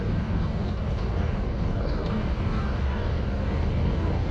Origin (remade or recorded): remade